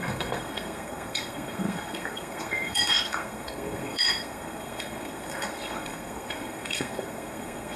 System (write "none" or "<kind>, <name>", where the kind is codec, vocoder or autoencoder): codec, SNAC